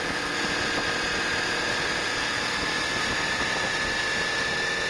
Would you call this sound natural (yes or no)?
yes